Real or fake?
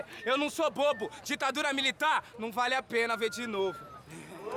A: real